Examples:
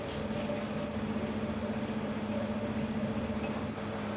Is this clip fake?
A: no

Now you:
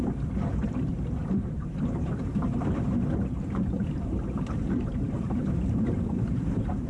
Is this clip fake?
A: yes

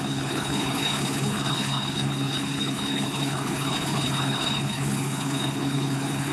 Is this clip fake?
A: yes